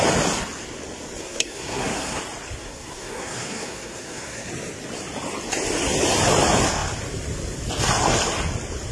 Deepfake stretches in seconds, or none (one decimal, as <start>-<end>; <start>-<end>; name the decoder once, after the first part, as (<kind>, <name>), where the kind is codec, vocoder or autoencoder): 1.2-2.2 (codec, SNAC); 2.6-4.5